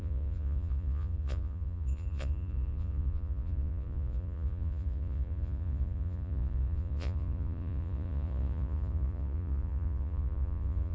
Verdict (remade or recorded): remade